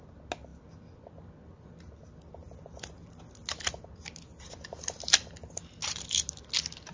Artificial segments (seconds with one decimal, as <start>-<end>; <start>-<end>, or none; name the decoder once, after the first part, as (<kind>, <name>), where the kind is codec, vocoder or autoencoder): none